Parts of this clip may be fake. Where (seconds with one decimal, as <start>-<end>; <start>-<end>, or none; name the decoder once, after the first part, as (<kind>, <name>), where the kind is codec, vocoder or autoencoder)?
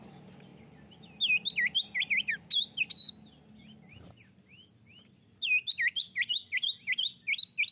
none